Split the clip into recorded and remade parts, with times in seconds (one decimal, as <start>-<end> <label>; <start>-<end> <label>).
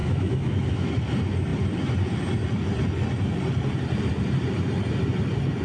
0.0-0.9 remade; 0.9-5.6 recorded